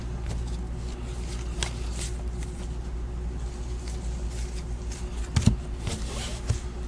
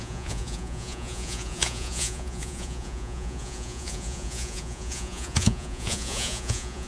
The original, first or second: first